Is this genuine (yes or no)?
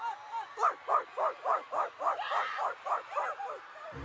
no